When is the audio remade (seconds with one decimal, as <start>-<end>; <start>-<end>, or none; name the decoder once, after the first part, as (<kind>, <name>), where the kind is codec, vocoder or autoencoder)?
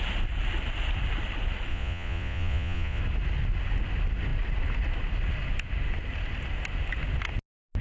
1.7-3.0 (vocoder, Vocos)